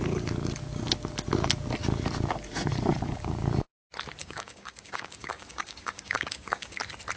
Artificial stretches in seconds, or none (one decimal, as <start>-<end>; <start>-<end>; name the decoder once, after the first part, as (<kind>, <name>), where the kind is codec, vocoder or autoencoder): 4.2-6.8 (codec, DAC)